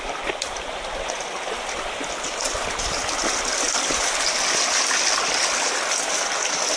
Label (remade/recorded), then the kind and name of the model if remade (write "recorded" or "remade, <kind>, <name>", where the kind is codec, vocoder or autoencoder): recorded